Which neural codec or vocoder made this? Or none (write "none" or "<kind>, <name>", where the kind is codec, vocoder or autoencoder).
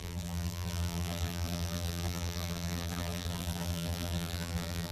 vocoder, BigVGAN v2